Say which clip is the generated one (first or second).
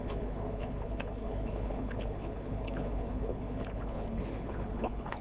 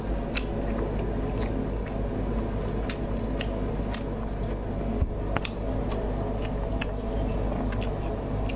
first